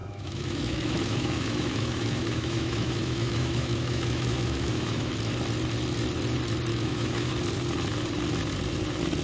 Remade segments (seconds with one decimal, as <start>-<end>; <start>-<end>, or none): 0.0-5.1; 6.7-7.3